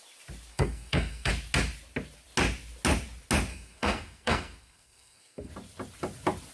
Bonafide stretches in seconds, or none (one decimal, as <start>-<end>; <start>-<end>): 0.0-0.5; 1.3-3.5; 5.5-6.5